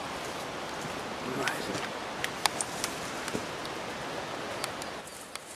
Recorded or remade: recorded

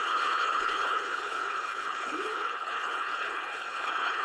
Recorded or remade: remade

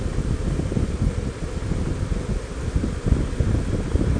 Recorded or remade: recorded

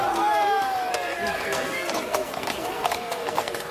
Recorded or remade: remade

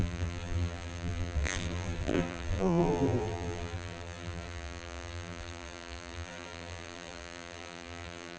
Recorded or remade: remade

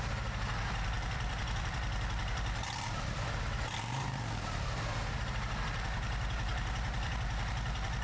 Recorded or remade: remade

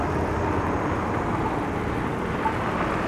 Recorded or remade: recorded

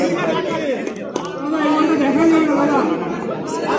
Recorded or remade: recorded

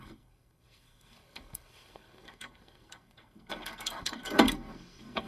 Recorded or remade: remade